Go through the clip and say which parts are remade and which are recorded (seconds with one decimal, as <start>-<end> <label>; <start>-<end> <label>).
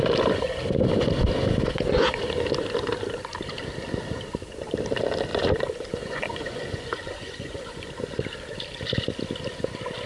0.0-1.4 recorded; 1.4-2.2 remade; 2.2-5.3 recorded; 5.3-7.9 remade; 7.9-10.1 recorded